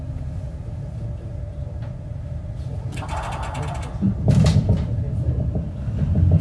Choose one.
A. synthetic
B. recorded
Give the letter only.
B